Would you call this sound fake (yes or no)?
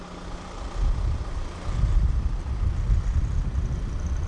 no